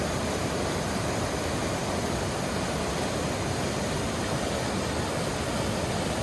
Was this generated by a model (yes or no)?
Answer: no